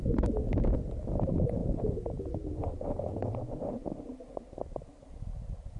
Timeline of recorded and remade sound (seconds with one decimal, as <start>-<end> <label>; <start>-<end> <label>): 0.0-5.8 recorded